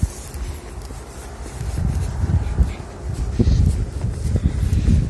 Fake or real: fake